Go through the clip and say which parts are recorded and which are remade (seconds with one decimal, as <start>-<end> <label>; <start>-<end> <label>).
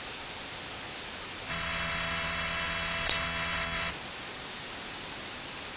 0.0-1.5 recorded; 1.5-3.9 remade; 3.9-5.8 recorded